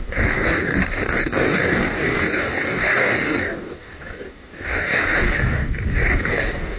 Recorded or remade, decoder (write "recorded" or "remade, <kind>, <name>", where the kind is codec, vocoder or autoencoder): remade, codec, DAC